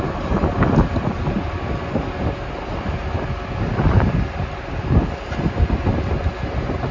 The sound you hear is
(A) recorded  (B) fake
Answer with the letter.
A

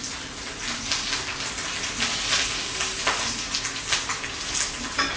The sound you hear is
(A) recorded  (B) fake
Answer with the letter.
A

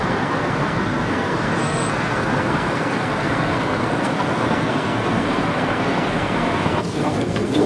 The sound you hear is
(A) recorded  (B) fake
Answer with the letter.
B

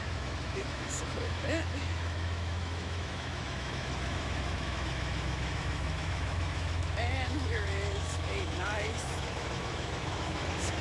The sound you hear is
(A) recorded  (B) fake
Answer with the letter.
B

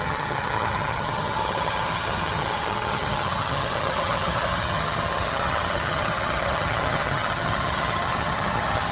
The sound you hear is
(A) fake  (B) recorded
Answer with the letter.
A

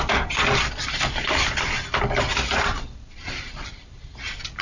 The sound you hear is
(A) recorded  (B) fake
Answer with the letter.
A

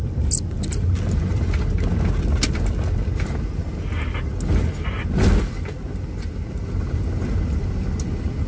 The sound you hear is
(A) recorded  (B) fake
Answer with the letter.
A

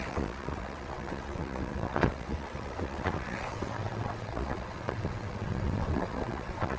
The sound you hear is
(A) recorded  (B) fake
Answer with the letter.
B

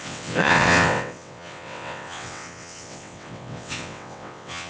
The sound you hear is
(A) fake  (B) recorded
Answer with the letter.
A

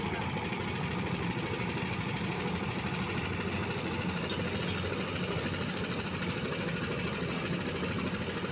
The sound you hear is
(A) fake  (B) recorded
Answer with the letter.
B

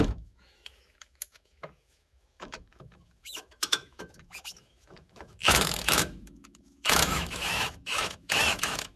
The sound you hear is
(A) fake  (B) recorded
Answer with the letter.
A